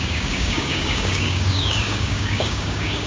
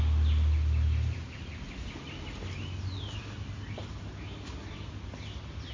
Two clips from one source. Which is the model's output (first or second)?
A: first